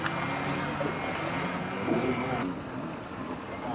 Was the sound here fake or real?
real